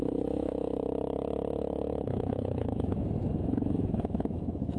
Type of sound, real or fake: fake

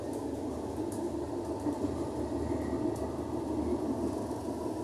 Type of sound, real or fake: real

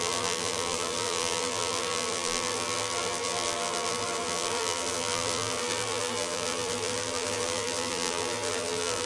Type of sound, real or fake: fake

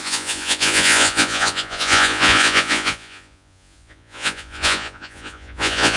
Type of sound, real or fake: fake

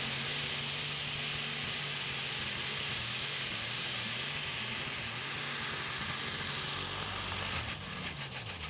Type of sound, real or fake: real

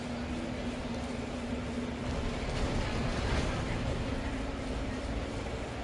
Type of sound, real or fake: real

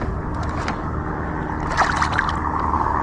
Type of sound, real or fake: real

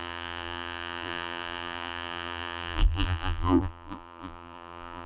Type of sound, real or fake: fake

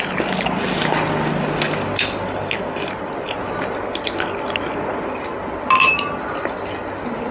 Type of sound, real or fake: real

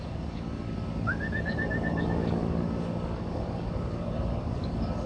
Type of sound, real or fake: fake